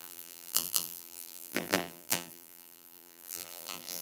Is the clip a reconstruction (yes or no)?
yes